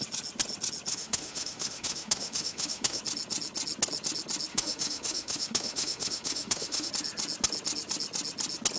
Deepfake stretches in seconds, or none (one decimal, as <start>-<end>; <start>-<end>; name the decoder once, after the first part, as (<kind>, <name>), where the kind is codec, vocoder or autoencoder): 0.9-3.0 (autoencoder, DAC-VAE); 4.5-6.9